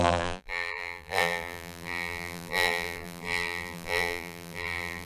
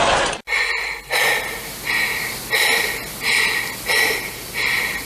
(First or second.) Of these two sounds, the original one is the second